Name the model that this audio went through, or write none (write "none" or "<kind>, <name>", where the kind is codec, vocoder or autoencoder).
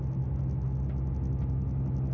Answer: none